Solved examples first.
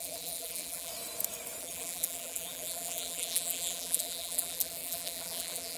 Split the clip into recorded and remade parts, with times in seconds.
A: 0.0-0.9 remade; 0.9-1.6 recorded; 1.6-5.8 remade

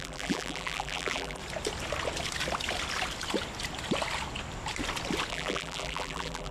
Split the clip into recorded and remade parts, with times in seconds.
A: 0.0-1.4 remade; 1.4-5.3 recorded; 5.3-6.5 remade

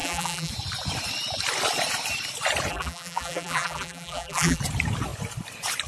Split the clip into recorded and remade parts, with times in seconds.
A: 0.0-0.5 remade; 0.5-2.7 recorded; 2.7-4.6 remade; 4.6-5.9 recorded

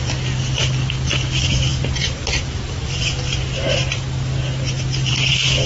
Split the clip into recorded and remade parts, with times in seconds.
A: 0.0-5.7 recorded